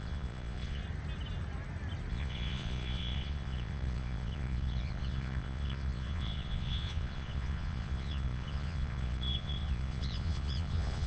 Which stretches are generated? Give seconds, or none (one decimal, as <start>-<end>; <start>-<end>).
0.0-0.8; 2.1-11.1